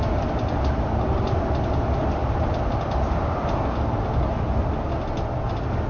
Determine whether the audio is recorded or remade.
recorded